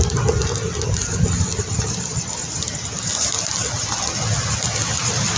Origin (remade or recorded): recorded